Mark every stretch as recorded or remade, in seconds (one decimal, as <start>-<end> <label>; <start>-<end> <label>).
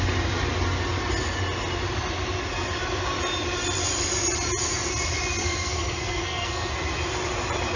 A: 0.0-5.4 recorded; 5.4-6.7 remade; 6.7-7.8 recorded